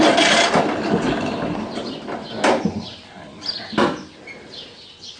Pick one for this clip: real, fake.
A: real